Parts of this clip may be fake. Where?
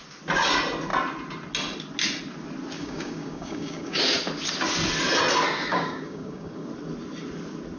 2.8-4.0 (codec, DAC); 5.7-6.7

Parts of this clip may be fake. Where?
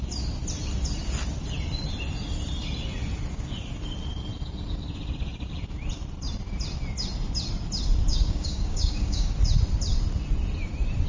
8.1-9.3 (codec, DAC)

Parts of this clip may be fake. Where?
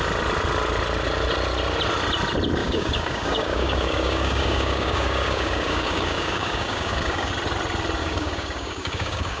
2.6-7.3 (codec, DAC); 8.0-9.4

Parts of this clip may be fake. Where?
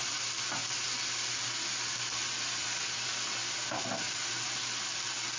none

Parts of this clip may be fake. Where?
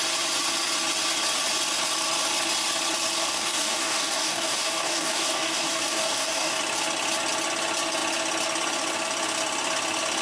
3.2-6.6 (codec, DAC)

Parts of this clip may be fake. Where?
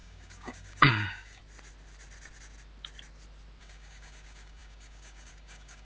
0.0-1.4 (codec, DAC); 3.6-5.8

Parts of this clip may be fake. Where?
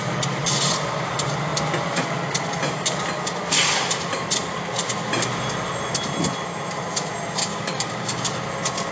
7.4-8.2 (codec, DAC)